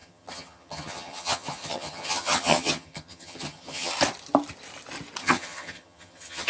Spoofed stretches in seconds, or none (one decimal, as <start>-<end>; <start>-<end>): 0.0-3.9; 5.2-6.5